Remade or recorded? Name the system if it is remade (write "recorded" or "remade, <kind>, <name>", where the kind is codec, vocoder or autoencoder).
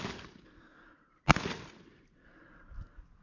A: recorded